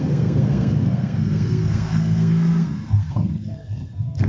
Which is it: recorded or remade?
remade